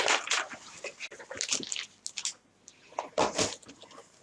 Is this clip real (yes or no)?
yes